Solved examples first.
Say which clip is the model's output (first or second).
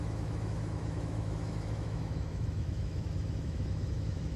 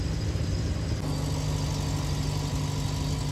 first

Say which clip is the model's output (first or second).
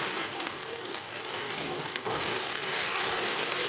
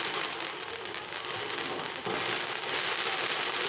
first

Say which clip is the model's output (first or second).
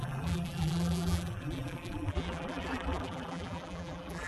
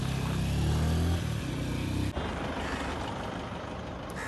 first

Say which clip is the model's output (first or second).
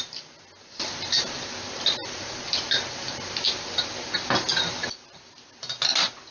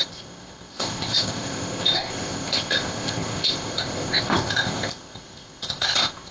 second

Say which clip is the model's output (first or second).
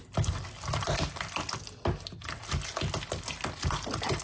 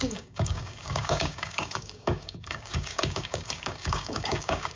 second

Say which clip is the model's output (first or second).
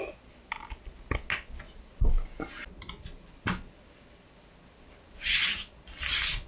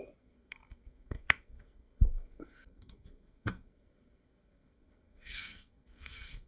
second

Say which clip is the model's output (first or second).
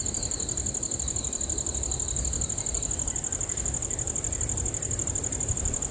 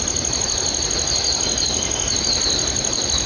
first